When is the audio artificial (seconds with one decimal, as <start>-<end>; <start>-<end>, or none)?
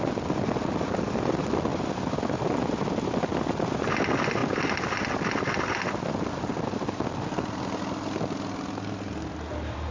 none